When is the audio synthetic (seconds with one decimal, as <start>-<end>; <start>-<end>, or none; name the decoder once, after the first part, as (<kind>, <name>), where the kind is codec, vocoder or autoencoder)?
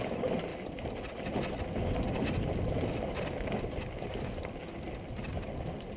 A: none